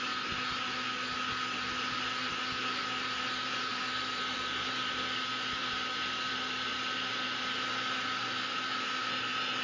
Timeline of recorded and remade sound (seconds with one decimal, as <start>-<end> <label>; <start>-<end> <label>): 0.0-9.6 recorded